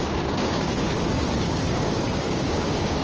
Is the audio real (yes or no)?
no